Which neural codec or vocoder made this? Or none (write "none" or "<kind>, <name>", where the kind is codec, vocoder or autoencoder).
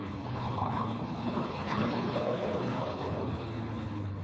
codec, HILCodec